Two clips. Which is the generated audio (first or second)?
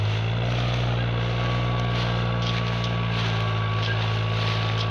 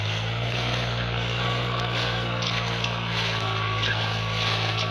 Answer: second